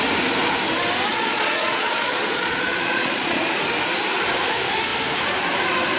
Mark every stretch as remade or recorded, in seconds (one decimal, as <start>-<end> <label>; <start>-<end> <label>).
0.0-1.1 recorded; 1.1-3.4 remade; 3.4-6.0 recorded